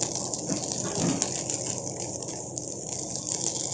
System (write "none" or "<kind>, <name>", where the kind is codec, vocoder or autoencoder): none